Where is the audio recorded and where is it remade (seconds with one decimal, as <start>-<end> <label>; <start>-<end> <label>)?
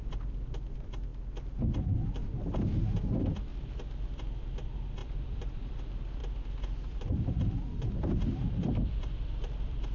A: 0.0-1.1 remade; 1.1-1.7 recorded; 1.7-3.5 remade; 3.5-4.4 recorded; 4.4-6.2 remade; 6.2-6.9 recorded; 6.9-9.9 remade